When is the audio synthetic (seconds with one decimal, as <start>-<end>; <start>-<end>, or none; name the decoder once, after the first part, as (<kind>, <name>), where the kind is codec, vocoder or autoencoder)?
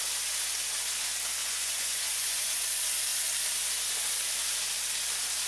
1.4-2.6 (vocoder, Vocos)